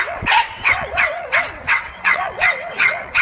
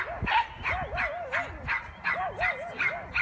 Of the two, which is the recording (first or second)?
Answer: second